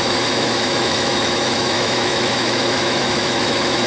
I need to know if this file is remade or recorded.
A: remade